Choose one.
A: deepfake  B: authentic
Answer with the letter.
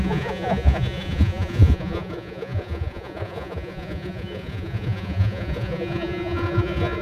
A